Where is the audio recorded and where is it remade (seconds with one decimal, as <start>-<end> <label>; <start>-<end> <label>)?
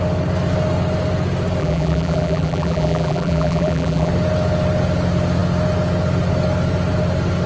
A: 0.0-1.6 recorded; 1.6-4.1 remade; 4.1-7.5 recorded